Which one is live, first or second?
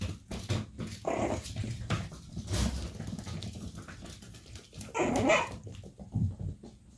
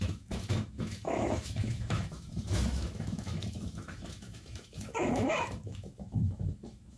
first